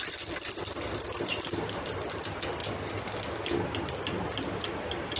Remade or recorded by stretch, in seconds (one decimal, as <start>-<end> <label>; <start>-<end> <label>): 0.0-5.2 recorded